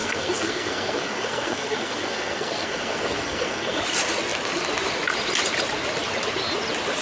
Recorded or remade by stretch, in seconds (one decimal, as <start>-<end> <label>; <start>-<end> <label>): 0.0-3.8 remade; 3.8-7.0 recorded

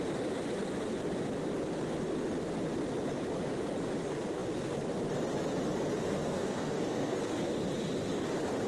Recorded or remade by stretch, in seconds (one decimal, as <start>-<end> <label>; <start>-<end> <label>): 0.0-6.1 recorded; 6.1-7.2 remade; 7.2-8.7 recorded